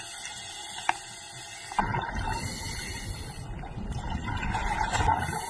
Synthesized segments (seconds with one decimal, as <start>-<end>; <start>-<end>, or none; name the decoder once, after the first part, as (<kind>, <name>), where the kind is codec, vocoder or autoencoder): none

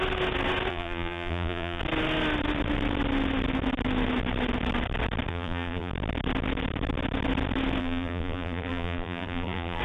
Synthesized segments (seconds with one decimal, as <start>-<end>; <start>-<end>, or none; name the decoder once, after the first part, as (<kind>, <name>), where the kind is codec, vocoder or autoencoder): 0.7-1.8 (vocoder, BigVGAN v2); 5.3-5.9; 7.8-9.8

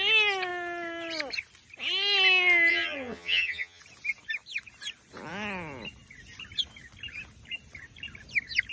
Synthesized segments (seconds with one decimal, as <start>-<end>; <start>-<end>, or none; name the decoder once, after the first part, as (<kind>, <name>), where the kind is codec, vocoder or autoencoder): 2.7-3.8 (vocoder, HiFi-GAN)

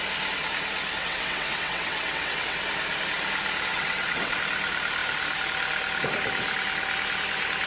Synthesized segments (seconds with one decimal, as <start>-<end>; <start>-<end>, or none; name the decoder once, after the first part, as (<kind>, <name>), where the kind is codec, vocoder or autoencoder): 1.0-2.6 (vocoder, WaveNeXt); 3.7-4.4

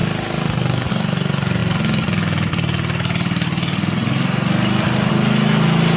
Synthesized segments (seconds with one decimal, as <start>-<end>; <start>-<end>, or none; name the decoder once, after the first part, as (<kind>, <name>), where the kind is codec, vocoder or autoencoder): none